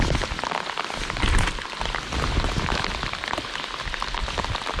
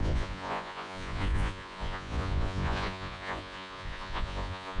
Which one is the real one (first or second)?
first